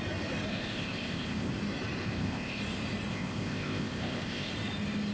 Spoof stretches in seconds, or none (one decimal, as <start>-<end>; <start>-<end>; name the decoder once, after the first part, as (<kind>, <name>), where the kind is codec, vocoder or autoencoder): 0.5-1.5 (codec, ZipCodec); 2.0-2.6; 3.1-4.5